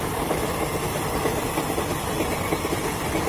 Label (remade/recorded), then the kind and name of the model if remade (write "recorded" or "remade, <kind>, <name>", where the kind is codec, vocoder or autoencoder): recorded